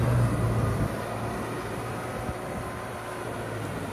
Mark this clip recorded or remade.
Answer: recorded